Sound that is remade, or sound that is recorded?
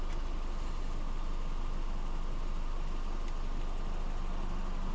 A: recorded